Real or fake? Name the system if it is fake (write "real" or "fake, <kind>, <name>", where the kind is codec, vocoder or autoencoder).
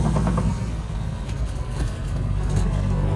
fake, codec, SNAC